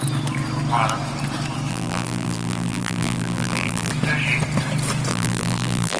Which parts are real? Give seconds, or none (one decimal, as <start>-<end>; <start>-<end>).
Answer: 0.0-1.7; 3.9-5.1